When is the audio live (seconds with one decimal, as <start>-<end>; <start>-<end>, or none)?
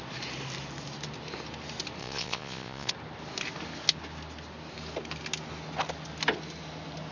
0.0-2.0; 2.9-7.1